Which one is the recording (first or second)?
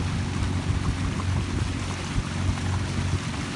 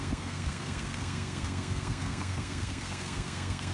first